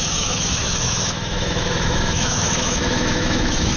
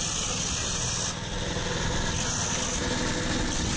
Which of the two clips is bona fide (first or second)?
second